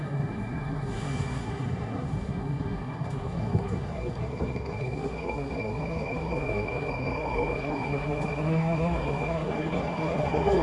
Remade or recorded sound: remade